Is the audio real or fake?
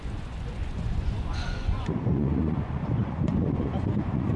fake